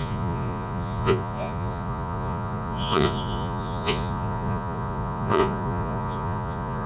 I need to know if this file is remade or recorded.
remade